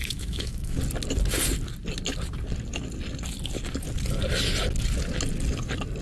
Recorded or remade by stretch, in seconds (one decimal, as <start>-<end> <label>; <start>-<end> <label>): 0.0-0.8 remade; 0.8-6.0 recorded